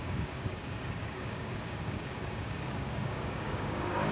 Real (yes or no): no